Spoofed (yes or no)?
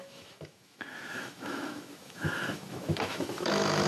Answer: yes